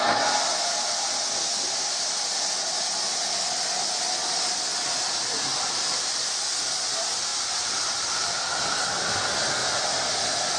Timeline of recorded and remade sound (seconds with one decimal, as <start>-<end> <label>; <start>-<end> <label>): 0.0-4.7 recorded; 4.7-6.3 remade; 6.3-7.3 recorded; 7.3-9.2 remade; 9.2-9.6 recorded; 9.6-10.1 remade; 10.1-10.6 recorded